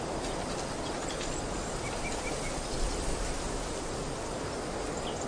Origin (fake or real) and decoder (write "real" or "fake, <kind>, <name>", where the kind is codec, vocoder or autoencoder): real